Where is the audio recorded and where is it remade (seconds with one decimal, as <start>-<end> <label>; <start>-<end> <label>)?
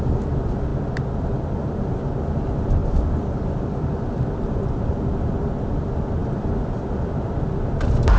0.0-0.7 recorded; 0.7-2.0 remade; 2.0-2.8 recorded; 2.8-4.9 remade; 4.9-6.2 recorded; 6.2-7.3 remade; 7.3-8.2 recorded